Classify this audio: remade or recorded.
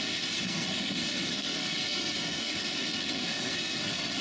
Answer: remade